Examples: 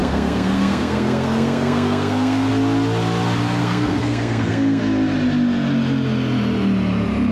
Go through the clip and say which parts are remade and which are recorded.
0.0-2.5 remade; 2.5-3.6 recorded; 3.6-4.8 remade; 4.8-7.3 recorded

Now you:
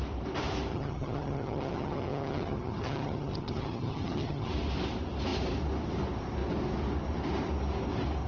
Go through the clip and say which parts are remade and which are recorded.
0.0-0.7 recorded; 0.7-4.5 remade; 4.5-8.3 recorded

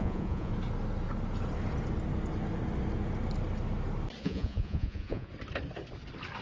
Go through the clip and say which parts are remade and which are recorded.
0.0-0.5 remade; 0.5-4.2 recorded; 4.2-5.3 remade; 5.3-6.4 recorded